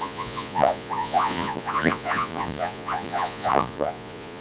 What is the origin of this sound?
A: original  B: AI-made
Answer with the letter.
B